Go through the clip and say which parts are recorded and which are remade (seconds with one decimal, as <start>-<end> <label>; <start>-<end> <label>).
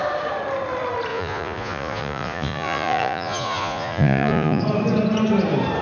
0.0-1.1 recorded; 1.1-4.6 remade; 4.6-5.8 recorded